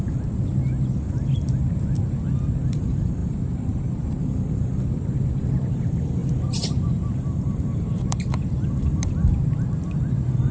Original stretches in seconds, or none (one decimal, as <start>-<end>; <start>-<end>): 3.2-4.0